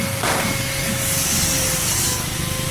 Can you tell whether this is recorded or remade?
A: remade